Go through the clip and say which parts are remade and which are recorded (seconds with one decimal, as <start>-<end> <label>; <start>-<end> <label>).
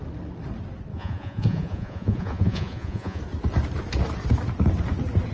0.0-0.9 recorded; 0.9-3.2 remade; 3.2-5.3 recorded